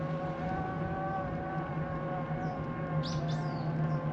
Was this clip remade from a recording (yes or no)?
no